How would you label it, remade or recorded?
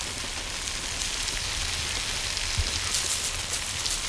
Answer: recorded